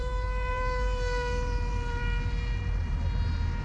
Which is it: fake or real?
fake